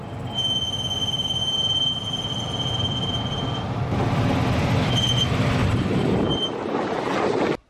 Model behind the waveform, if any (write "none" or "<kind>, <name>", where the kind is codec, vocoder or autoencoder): none